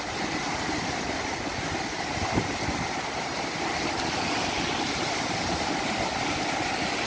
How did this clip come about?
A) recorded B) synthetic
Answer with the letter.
A